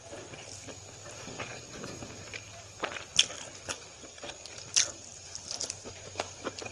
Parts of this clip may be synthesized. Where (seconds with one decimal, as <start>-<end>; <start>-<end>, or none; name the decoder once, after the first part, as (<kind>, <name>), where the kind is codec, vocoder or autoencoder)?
0.0-3.1 (vocoder, BigVGAN v2); 4.9-6.7